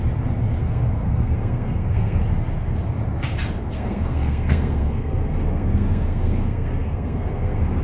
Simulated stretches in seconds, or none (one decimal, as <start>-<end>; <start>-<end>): 0.6-2.2; 3.6-7.8